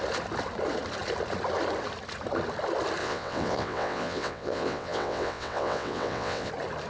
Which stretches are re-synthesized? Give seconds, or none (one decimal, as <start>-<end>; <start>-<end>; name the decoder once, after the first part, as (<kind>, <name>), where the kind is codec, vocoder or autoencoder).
3.0-6.5 (vocoder, WaveNeXt)